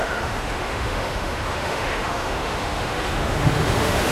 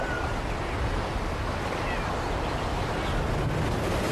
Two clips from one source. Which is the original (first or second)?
second